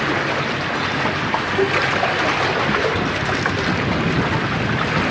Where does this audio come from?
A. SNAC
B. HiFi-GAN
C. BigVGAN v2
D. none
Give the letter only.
D